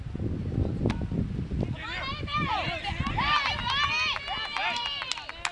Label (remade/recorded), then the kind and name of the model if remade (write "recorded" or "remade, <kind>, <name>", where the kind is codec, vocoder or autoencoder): recorded